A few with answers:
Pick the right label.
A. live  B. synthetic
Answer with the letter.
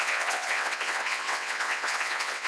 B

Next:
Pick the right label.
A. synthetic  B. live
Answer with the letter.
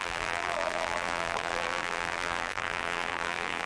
A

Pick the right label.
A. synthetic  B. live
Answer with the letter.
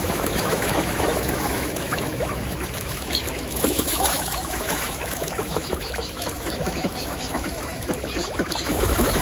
A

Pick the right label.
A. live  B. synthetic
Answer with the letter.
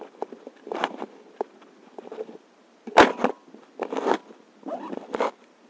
A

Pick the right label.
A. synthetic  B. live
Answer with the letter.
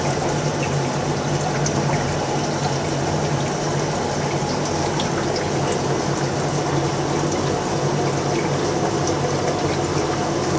B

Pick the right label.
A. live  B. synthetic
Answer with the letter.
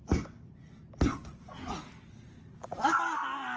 A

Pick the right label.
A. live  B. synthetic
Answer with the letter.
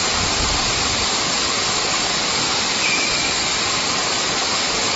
B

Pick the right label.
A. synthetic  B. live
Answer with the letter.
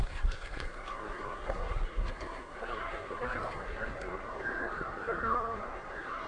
A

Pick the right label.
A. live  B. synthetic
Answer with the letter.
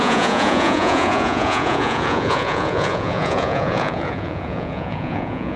B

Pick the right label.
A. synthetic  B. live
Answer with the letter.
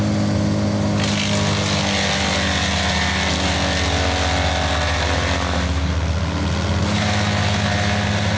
B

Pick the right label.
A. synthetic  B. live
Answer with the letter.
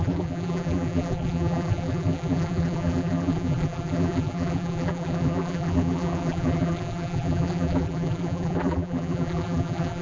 A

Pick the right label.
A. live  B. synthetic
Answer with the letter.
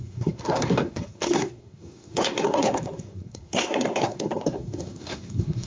B